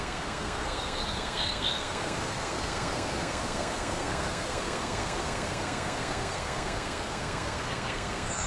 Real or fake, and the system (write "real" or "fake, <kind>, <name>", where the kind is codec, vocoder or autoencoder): fake, codec, SNAC